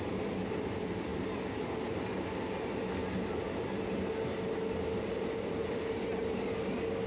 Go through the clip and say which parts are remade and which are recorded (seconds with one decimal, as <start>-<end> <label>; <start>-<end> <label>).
0.0-7.1 recorded